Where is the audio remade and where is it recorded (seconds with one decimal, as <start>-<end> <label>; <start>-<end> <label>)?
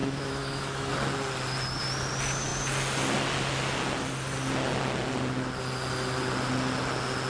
0.0-0.9 remade; 0.9-7.3 recorded